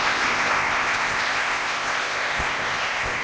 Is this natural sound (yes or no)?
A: no